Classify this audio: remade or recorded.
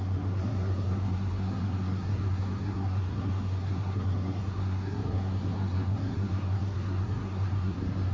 remade